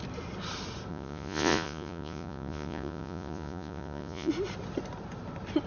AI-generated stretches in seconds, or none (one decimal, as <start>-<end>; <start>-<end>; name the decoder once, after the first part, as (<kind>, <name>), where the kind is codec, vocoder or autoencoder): 0.9-4.3 (vocoder, Vocos)